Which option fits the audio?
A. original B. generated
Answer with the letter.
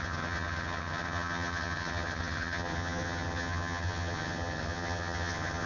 B